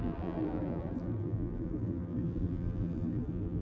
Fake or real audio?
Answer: fake